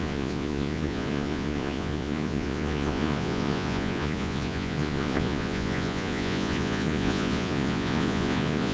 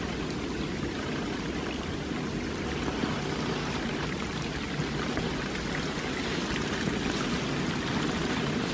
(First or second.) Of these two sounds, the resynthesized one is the first